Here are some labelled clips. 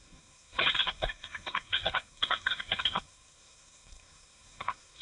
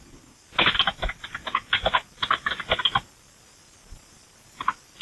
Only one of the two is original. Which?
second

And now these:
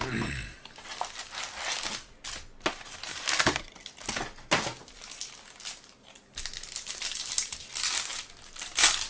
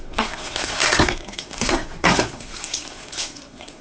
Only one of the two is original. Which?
first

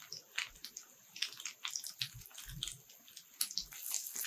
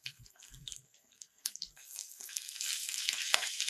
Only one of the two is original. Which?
first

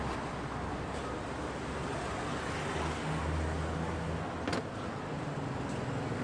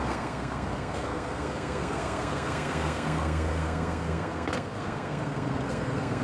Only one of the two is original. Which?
first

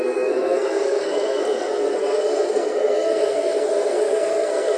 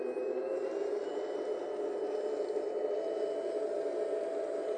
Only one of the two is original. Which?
second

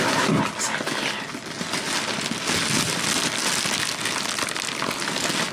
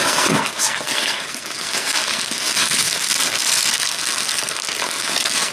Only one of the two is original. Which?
first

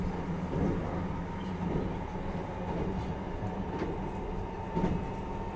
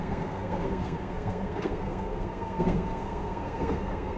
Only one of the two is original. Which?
first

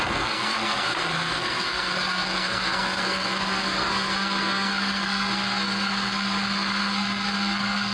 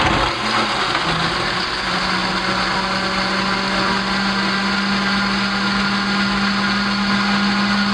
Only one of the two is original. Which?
second